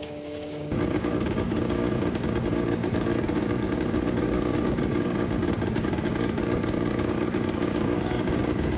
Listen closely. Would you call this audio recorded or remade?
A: remade